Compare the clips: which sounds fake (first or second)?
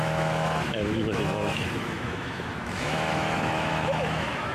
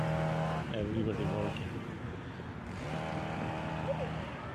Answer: first